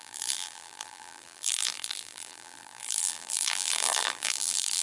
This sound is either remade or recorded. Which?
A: remade